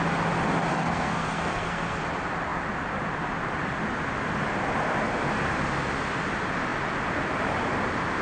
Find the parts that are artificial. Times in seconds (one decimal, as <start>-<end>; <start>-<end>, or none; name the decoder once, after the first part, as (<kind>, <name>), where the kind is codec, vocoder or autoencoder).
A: 0.7-2.0 (codec, SNAC)